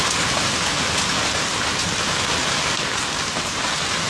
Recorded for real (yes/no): yes